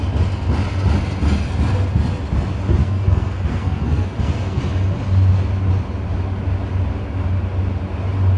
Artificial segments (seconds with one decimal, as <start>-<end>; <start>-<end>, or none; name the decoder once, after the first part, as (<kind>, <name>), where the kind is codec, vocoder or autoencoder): 2.8-4.6 (codec, SNAC)